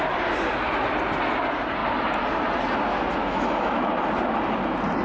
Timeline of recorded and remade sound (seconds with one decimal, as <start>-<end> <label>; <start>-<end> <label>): 0.0-3.2 recorded; 3.2-3.9 remade; 3.9-5.0 recorded